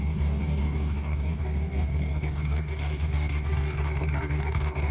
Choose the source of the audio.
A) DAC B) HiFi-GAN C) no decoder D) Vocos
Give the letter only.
A